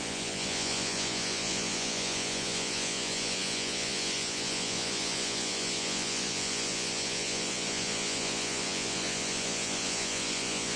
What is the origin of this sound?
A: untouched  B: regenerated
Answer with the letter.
B